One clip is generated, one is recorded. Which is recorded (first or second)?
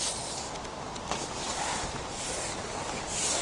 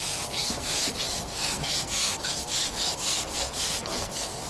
first